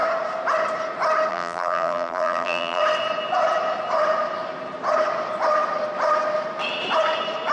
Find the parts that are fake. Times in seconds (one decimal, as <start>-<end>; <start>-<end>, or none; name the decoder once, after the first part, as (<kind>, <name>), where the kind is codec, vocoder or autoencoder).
1.3-2.8 (vocoder, BigVGAN v2)